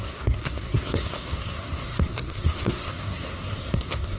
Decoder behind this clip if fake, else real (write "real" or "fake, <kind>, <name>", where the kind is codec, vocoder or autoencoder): fake, codec, SNAC